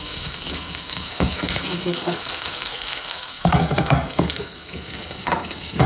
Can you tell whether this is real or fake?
fake